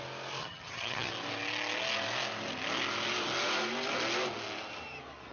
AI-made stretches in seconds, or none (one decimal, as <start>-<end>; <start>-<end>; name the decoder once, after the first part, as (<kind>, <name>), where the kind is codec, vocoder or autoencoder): 0.4-1.1 (vocoder, HiFi-GAN)